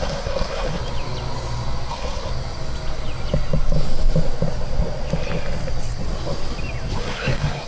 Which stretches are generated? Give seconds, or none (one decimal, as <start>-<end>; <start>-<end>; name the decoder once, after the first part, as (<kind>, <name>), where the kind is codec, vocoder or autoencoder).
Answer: 0.0-0.8 (codec, SNAC); 1.9-2.3; 6.9-7.7